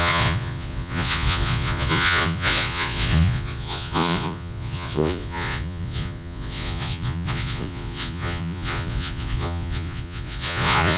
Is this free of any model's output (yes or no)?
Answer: no